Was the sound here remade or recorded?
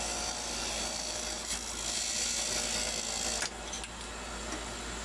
recorded